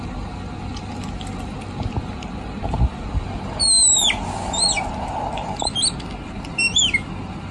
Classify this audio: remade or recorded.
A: recorded